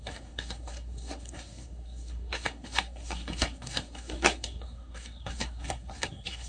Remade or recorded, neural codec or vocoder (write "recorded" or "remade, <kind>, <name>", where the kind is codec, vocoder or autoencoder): remade, codec, SNAC